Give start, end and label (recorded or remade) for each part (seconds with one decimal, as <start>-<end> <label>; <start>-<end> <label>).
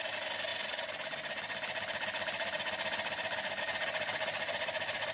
0.0-5.1 recorded